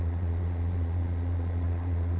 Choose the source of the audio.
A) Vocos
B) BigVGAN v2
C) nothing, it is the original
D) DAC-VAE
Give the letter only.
A